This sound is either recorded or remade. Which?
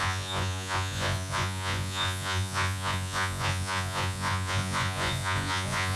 remade